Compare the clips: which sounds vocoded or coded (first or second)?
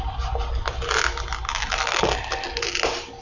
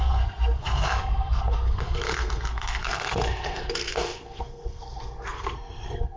second